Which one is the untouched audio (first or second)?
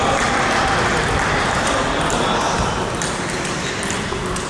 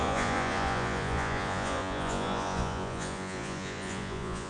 first